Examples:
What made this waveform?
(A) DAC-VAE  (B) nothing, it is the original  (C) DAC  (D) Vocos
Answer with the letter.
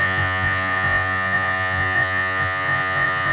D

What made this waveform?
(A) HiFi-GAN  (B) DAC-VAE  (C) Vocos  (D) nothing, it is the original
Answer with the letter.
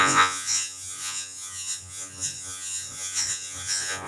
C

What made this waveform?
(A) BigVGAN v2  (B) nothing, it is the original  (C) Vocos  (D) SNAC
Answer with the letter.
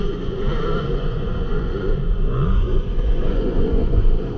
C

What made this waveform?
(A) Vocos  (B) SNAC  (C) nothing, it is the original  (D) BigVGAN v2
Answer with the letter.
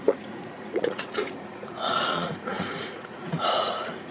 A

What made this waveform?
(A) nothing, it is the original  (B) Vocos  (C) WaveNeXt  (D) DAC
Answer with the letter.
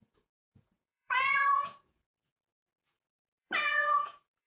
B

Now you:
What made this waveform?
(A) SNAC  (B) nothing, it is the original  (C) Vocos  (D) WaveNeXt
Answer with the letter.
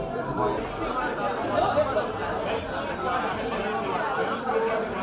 B